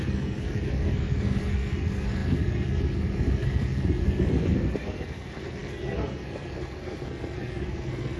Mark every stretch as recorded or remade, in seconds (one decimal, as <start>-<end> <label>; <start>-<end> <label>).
0.0-8.2 remade